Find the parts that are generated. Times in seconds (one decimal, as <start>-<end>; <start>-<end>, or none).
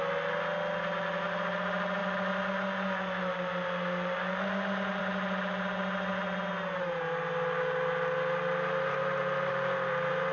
none